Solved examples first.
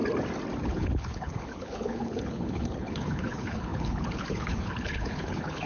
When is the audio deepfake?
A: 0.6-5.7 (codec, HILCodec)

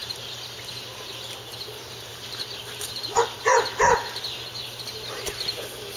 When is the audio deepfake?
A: 0.0-0.6 (vocoder, BigVGAN v2)

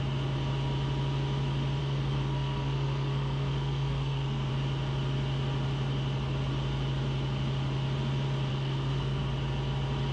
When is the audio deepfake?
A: 1.8-4.5 (codec, SNAC); 8.5-9.2

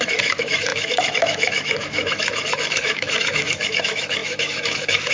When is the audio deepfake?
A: 0.0-5.1 (autoencoder, DAC-VAE)

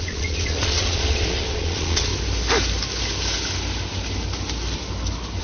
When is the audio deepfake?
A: 0.0-2.1 (vocoder, Vocos)

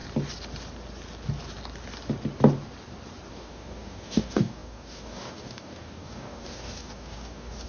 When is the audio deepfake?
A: 3.3-7.7 (codec, DAC)

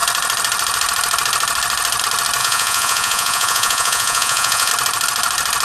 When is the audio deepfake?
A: 2.4-4.7 (vocoder, Vocos)